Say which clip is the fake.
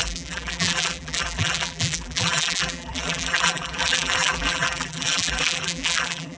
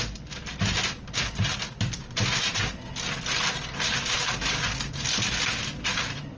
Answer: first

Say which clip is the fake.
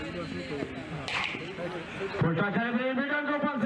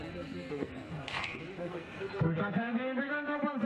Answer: second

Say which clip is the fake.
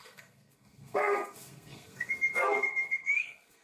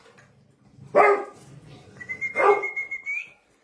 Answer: first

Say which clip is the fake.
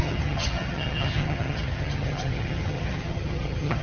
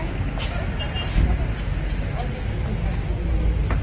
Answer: first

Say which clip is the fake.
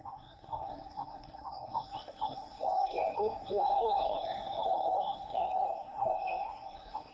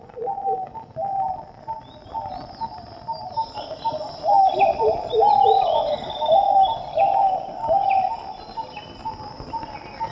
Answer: first